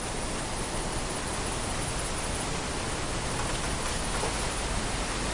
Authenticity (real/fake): real